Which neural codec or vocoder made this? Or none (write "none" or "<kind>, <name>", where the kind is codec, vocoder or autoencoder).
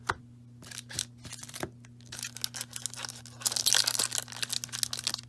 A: none